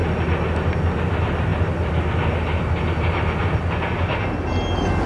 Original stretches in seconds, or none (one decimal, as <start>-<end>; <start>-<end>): 0.0-5.1